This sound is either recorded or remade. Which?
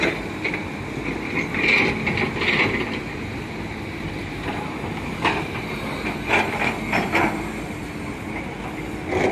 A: recorded